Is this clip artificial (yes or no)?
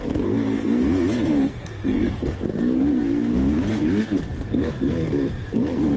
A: yes